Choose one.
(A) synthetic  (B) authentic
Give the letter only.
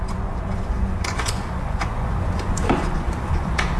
A